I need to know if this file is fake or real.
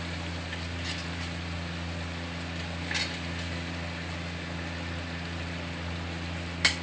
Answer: real